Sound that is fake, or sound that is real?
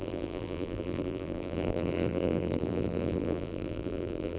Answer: fake